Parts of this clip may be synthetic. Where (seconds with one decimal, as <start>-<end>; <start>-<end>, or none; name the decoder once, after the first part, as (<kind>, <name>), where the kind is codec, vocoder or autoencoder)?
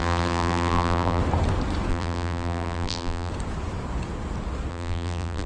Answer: 0.0-1.2 (vocoder, BigVGAN v2); 1.9-3.3; 4.7-5.5